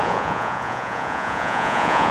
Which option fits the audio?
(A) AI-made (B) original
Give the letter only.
A